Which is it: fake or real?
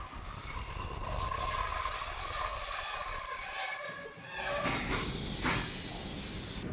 real